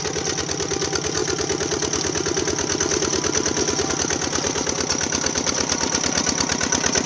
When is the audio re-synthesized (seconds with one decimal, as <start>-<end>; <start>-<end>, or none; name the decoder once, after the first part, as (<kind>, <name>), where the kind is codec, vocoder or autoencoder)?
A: none